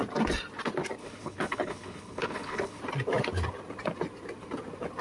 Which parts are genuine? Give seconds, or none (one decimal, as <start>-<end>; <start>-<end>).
0.0-1.0; 2.8-5.0